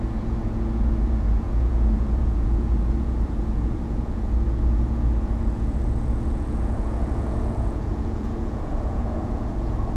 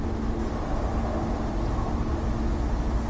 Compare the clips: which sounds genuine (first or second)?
second